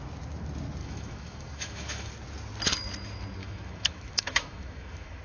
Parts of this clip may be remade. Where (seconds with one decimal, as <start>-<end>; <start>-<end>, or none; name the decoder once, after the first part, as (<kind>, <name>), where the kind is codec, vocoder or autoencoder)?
0.8-2.1 (autoencoder, DAC-VAE); 3.4-5.2